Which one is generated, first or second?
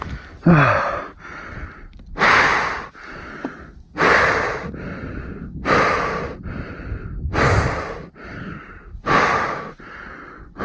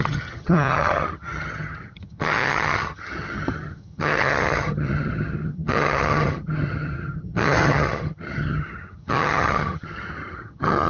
second